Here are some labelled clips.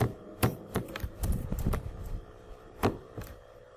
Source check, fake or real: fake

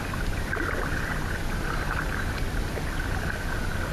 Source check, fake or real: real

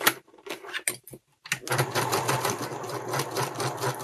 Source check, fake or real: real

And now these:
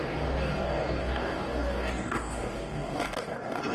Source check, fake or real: fake